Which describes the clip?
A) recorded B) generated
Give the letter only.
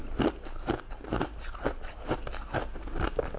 A